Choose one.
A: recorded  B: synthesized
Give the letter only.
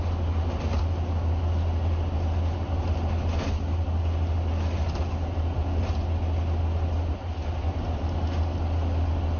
A